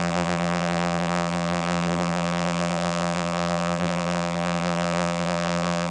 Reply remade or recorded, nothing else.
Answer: remade